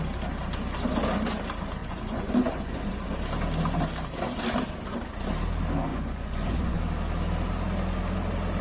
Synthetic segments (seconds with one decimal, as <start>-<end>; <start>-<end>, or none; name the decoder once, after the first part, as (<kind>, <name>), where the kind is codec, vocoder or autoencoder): 1.8-2.9 (vocoder, Vocos); 5.9-6.8

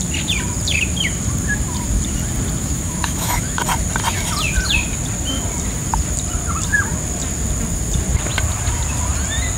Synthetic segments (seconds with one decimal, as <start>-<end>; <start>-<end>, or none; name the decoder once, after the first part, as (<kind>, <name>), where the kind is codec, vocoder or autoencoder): 2.6-3.6 (autoencoder, DAC-VAE)

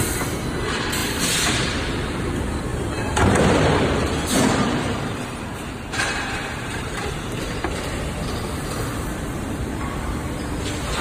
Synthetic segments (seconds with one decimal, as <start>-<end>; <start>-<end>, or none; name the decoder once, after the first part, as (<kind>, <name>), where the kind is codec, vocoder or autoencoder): 1.0-1.7 (vocoder, BigVGAN v2); 2.7-7.6

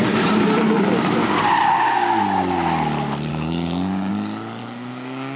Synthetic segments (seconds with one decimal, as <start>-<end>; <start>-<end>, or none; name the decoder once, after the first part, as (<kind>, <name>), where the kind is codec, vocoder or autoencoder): 1.2-2.2 (codec, DAC); 3.3-4.1; 4.6-5.4

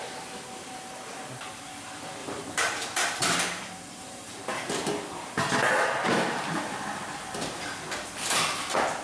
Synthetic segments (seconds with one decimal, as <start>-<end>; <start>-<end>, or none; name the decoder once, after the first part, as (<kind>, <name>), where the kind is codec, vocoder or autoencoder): 2.2-4.3 (vocoder, BigVGAN v2)

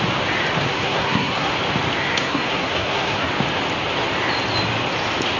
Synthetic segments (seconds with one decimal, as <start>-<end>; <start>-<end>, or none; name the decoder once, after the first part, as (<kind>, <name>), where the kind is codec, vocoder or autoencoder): 0.7-1.5 (codec, SNAC); 2.0-3.3

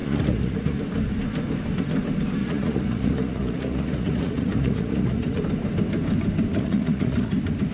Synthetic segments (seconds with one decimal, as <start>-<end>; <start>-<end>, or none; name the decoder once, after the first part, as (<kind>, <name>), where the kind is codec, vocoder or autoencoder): 0.0-0.8 (vocoder, Vocos); 2.4-5.4; 6.5-7.3

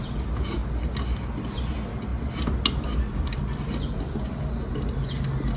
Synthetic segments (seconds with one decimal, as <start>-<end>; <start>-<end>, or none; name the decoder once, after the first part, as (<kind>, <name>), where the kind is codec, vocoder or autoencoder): none